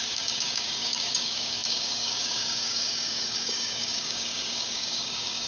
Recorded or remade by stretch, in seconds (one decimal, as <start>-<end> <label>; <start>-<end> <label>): 0.0-5.5 remade